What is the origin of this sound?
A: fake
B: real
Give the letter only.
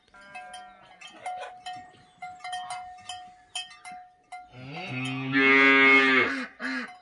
B